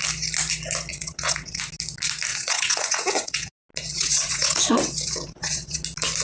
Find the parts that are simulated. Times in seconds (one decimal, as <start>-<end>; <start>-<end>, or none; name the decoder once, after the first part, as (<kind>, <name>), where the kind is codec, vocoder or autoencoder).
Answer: 0.9-1.6 (vocoder, WaveNeXt); 2.3-3.5; 3.9-5.8